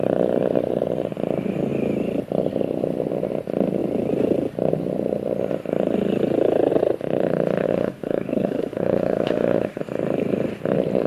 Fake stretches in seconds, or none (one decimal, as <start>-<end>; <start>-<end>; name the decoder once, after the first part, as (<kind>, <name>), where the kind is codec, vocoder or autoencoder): 7.6-9.8 (autoencoder, DAC-VAE)